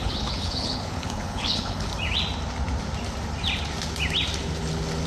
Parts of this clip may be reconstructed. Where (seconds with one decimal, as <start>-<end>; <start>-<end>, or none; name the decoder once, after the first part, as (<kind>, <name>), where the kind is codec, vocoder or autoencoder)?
0.0-1.9 (codec, HILCodec)